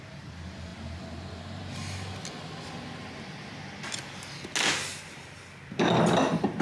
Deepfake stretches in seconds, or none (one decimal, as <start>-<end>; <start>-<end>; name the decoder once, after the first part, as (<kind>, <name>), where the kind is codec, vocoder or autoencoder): none